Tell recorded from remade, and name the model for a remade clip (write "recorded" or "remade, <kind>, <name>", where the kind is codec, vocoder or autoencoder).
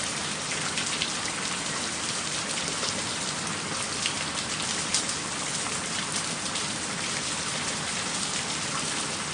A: recorded